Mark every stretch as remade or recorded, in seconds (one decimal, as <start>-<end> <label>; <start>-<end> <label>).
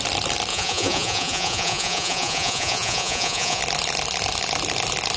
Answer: 0.0-0.5 recorded; 0.5-3.6 remade; 3.6-5.2 recorded